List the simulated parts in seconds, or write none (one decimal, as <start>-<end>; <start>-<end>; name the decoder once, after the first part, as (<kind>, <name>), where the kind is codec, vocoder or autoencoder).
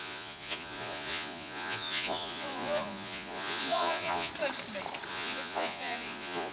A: 0.0-4.3 (vocoder, Vocos); 5.1-6.5